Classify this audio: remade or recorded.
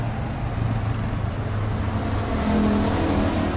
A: recorded